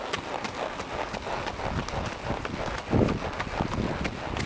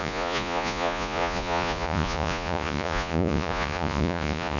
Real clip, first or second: first